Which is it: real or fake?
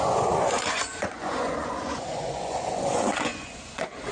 fake